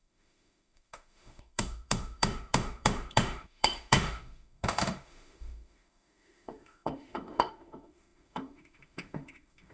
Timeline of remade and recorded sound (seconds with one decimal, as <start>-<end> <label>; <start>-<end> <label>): 0.0-9.7 remade